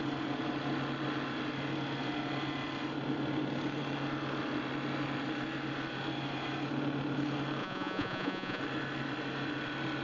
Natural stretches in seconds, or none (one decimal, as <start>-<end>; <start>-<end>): 0.0-7.6; 8.6-10.0